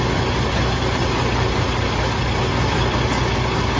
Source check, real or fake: real